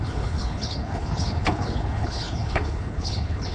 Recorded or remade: remade